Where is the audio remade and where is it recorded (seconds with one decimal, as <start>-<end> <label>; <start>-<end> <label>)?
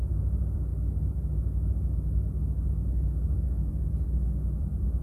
0.0-0.7 remade; 0.7-3.7 recorded; 3.7-5.0 remade